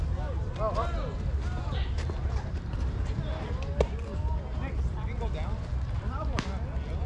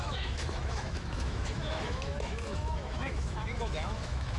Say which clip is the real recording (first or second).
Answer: first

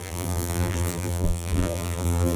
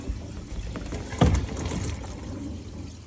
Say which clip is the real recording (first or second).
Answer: second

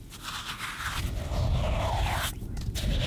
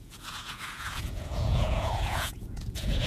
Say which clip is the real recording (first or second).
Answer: first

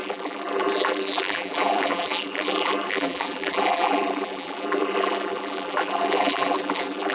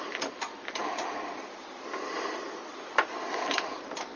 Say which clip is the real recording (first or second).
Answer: second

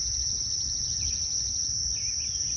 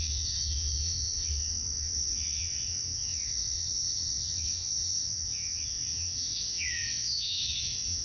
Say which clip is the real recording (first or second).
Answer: first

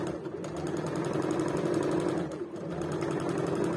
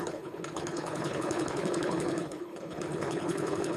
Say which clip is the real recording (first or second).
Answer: first